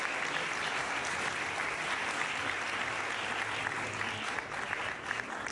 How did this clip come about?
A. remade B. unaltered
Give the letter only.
B